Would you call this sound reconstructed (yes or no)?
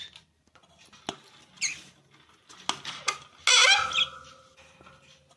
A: no